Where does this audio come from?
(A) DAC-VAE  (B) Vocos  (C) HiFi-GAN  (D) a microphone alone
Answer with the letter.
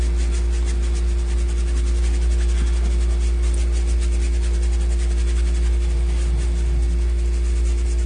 D